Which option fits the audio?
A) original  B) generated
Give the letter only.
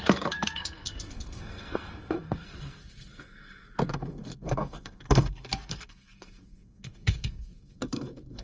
B